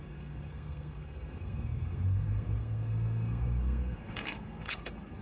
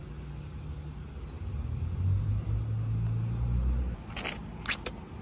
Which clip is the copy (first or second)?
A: first